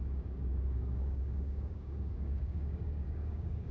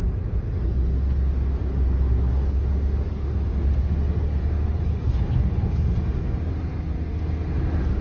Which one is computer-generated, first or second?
first